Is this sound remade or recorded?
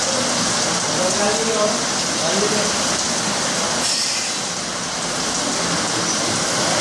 recorded